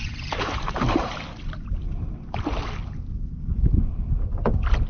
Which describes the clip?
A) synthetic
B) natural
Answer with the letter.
B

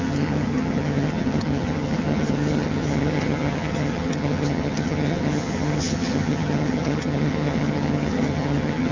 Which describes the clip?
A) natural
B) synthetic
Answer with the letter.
B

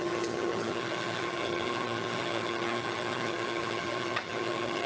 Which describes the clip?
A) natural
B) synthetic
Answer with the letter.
B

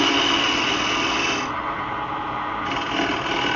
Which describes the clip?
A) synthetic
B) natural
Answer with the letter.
B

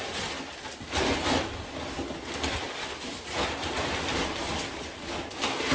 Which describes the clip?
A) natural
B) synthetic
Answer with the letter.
A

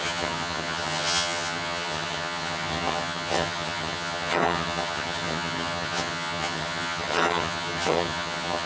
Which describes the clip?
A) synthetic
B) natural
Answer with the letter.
A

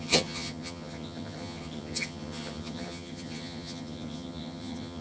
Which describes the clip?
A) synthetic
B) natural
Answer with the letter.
A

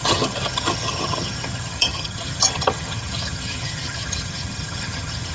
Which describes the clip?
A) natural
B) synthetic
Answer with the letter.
B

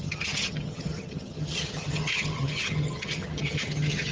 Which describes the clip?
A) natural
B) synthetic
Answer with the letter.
B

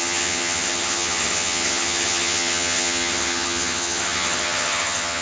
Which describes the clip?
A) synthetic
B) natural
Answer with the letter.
A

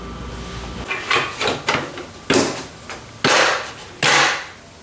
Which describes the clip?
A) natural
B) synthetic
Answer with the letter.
A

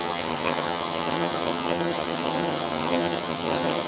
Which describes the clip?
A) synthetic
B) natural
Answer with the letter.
A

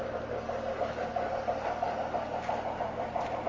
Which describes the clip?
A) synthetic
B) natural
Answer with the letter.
B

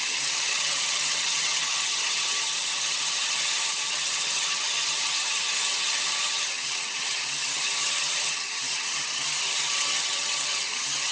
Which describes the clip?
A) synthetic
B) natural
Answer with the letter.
A